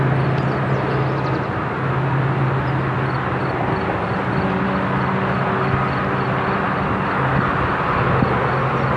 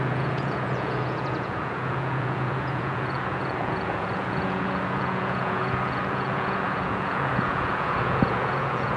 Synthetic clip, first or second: second